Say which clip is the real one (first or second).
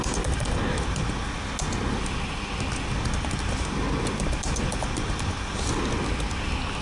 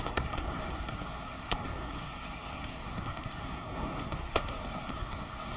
first